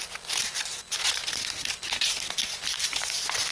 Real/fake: real